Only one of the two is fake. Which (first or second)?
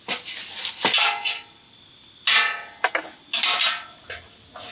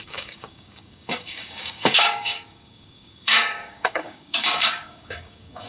second